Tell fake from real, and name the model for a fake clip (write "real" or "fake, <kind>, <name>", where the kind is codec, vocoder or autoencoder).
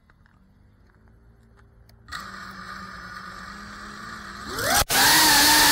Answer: real